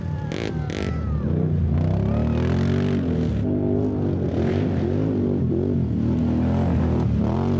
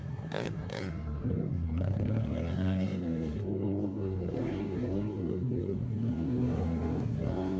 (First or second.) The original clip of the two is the first